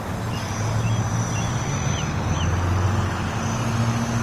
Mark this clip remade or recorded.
recorded